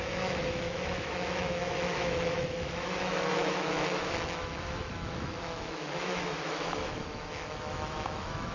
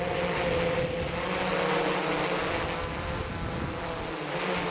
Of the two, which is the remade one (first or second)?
first